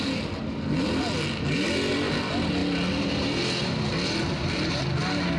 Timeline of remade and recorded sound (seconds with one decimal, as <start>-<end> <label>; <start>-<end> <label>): 0.0-5.4 recorded